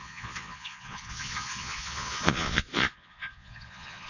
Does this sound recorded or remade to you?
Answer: remade